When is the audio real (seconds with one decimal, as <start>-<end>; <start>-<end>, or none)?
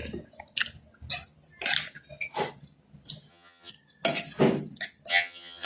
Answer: 0.0-3.3; 3.7-5.1